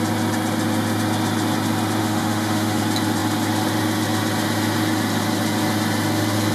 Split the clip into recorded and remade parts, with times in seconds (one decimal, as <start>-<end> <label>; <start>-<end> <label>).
0.0-2.0 recorded; 2.0-2.8 remade; 2.8-6.5 recorded